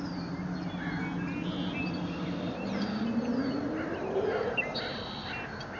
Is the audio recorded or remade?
recorded